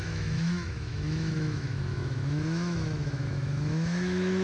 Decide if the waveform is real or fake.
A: fake